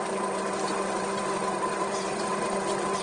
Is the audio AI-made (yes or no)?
yes